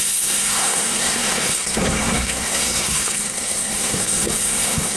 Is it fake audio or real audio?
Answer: fake